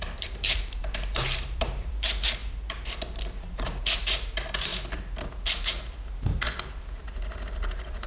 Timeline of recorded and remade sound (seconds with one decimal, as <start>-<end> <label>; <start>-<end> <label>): 0.0-4.7 remade; 4.7-8.1 recorded